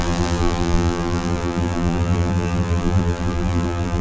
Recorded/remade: remade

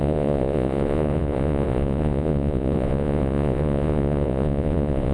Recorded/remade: remade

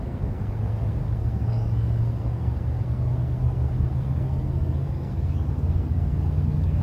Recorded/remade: remade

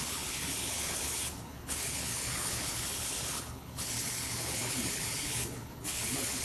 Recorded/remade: remade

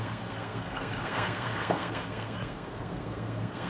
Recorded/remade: remade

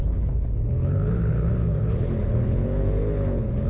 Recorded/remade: remade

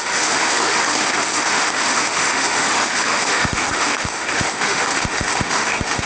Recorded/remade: remade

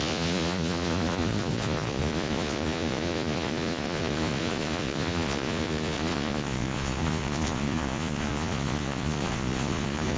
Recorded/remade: remade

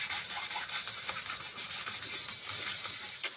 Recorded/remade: remade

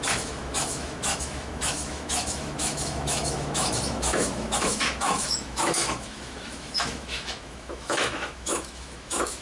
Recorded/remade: remade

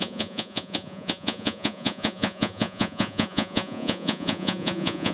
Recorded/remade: remade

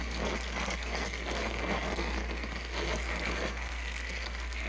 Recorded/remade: remade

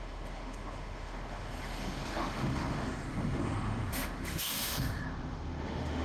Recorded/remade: remade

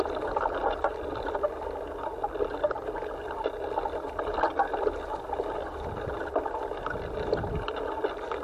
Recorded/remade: recorded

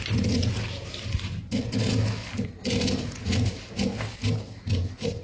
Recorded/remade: recorded